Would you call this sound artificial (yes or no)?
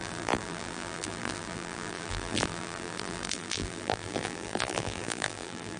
yes